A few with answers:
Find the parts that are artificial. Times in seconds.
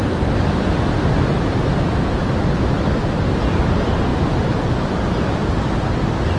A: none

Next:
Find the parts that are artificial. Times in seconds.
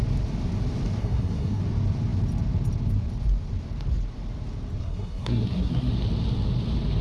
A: 1.0-1.6 (codec, SNAC); 4.8-5.9